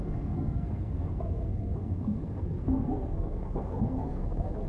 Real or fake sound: fake